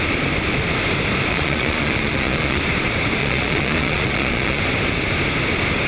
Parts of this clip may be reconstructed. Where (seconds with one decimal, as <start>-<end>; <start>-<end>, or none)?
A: 1.3-2.6; 3.2-4.6

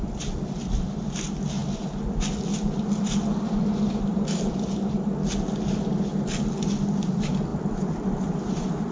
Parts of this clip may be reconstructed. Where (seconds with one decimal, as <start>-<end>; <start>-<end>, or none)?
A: none